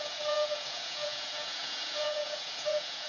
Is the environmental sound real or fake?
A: fake